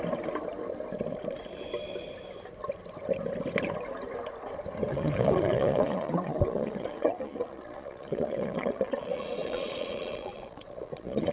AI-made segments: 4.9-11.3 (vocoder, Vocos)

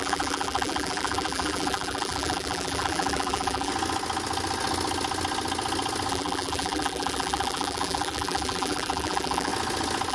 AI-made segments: 0.0-3.7 (vocoder, BigVGAN v2); 6.1-9.5

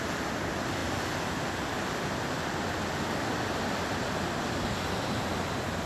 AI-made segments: none

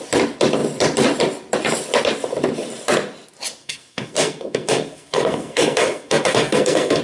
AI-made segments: 3.6-7.0 (codec, SNAC)